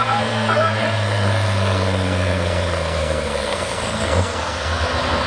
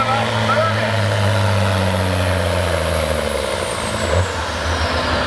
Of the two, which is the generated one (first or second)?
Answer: first